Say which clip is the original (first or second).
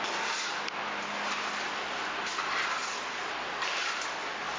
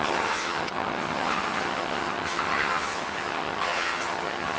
first